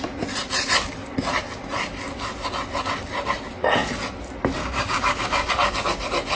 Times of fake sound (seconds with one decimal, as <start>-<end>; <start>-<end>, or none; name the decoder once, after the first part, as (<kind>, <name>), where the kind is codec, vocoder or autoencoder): 4.6-5.5 (codec, DAC)